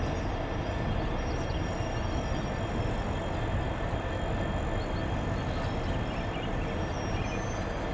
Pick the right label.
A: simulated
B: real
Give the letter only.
B